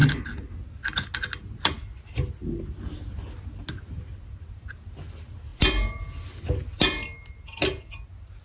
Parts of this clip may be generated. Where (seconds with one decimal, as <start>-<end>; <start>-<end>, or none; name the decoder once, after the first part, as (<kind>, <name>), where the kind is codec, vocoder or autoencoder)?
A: none